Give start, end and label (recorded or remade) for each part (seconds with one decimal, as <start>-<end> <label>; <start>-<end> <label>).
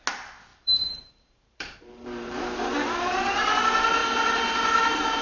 0.0-0.5 recorded; 0.5-3.6 remade; 3.6-4.0 recorded; 4.0-5.2 remade